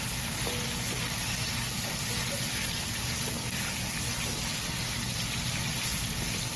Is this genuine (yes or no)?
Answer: yes